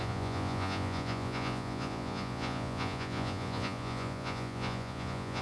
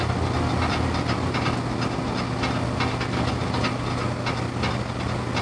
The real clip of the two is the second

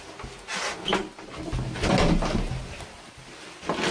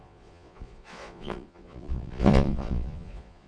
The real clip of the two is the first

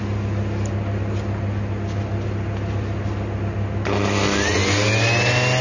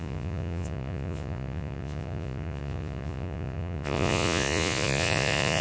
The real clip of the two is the first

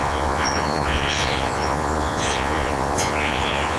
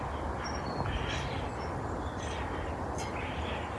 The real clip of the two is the second